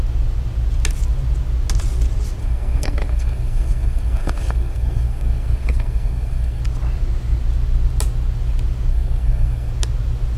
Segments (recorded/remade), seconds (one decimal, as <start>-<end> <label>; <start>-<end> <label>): 0.0-2.4 recorded; 2.4-6.6 remade; 6.6-8.9 recorded; 8.9-9.7 remade; 9.7-10.4 recorded